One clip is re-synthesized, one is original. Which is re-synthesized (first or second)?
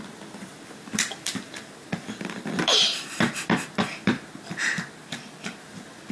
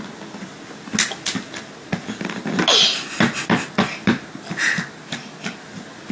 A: first